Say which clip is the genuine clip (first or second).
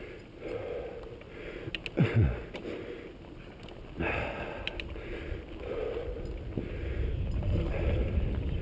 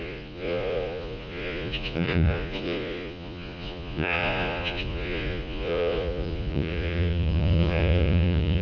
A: first